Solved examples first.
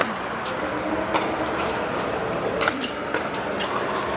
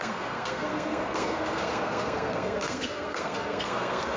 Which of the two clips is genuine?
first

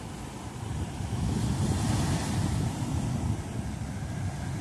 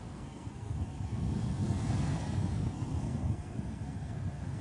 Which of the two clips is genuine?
first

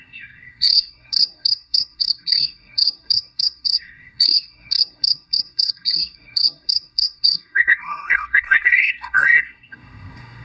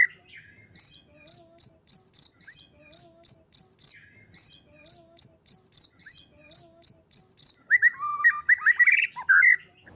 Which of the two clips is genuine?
second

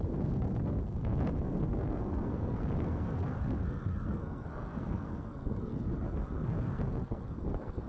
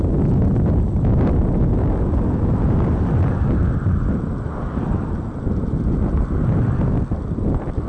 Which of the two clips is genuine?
second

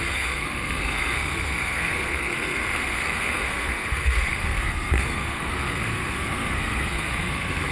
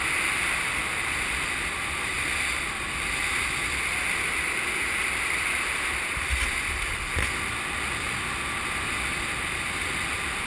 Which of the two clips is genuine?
second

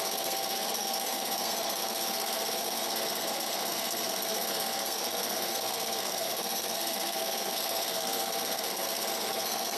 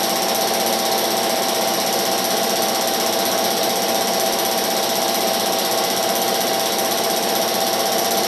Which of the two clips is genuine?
second